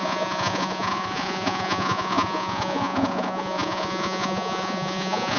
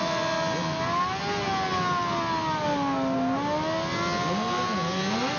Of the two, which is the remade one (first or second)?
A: first